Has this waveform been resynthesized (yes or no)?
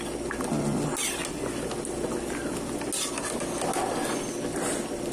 no